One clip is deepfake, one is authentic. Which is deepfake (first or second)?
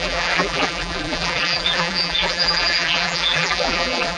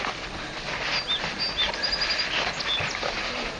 first